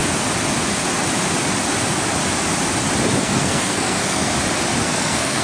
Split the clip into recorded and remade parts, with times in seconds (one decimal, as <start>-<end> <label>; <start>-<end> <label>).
0.0-3.2 recorded; 3.2-4.3 remade; 4.3-4.8 recorded; 4.8-5.4 remade